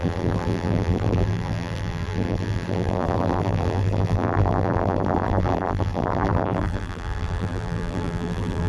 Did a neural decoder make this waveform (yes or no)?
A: yes